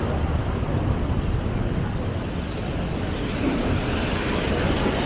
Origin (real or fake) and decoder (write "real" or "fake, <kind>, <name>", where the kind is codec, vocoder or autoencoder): real